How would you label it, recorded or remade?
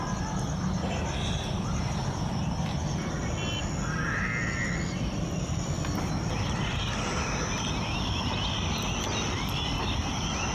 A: recorded